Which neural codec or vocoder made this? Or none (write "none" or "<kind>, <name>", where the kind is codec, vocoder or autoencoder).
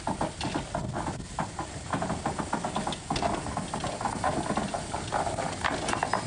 none